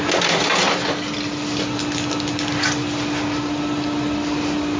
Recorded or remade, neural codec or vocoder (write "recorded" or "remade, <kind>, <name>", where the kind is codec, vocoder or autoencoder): recorded